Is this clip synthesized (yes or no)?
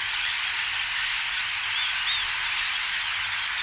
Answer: no